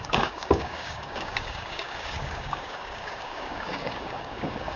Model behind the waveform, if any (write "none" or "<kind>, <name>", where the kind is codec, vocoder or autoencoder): codec, DAC